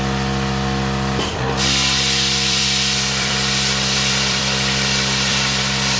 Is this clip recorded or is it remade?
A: remade